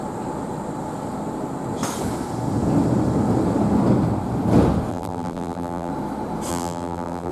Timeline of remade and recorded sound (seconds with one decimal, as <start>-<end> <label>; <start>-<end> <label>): 0.0-4.9 recorded; 4.9-5.9 remade; 5.9-6.5 recorded; 6.5-7.3 remade